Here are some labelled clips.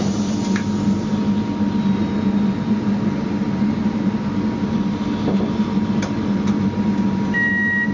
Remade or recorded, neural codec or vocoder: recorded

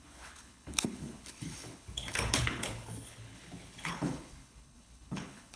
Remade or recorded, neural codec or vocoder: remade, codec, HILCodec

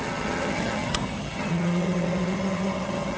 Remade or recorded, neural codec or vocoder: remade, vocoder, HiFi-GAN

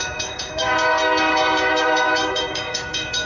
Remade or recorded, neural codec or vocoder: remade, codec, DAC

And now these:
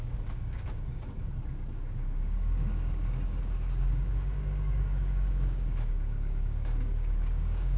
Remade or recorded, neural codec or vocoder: remade, codec, DAC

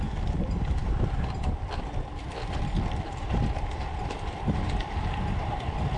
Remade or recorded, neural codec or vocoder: remade, vocoder, BigVGAN v2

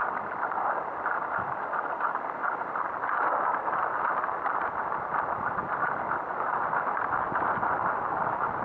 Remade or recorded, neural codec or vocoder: recorded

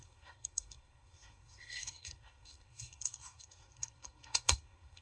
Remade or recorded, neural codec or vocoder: remade, codec, SNAC